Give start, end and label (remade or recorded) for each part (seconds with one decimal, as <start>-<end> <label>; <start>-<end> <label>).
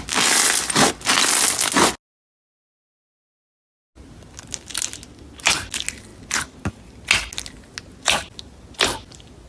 0.0-9.5 recorded